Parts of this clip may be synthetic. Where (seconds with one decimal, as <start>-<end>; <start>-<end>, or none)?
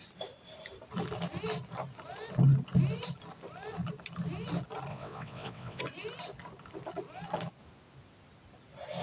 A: 4.9-5.8